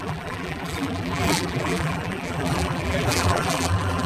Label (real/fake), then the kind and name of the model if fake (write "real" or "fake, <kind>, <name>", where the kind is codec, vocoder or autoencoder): fake, vocoder, BigVGAN v2